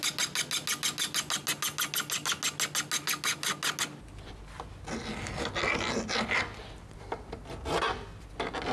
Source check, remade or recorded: recorded